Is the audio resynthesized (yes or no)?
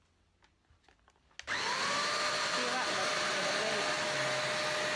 no